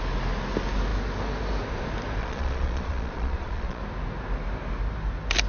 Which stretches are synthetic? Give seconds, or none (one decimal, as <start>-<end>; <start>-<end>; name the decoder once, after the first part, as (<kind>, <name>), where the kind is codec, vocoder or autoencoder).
2.2-3.8 (vocoder, Vocos)